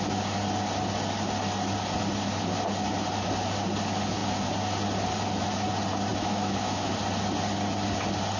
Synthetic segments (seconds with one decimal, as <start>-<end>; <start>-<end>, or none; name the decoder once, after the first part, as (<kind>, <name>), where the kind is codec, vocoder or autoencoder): 6.1-6.9 (autoencoder, DAC-VAE)